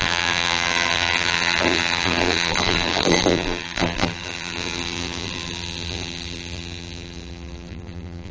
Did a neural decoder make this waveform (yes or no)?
yes